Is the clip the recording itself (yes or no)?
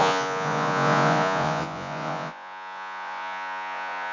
no